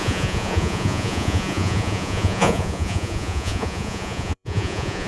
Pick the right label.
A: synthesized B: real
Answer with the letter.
A